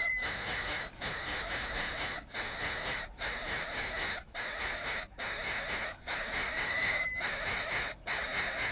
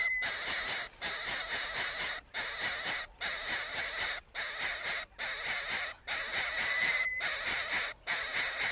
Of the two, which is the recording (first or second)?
second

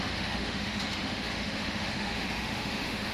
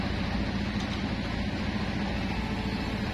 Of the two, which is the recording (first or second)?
second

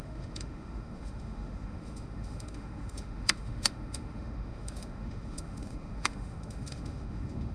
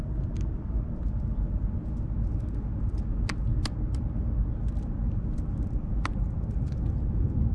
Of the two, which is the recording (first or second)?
second